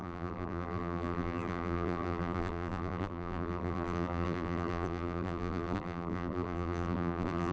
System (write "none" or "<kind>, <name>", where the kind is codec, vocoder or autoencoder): vocoder, BigVGAN v2